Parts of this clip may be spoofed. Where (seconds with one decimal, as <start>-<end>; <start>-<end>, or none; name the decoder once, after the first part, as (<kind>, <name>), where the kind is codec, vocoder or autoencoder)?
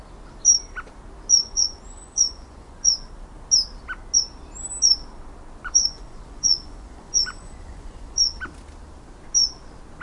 1.4-3.1 (vocoder, Vocos); 5.6-8.2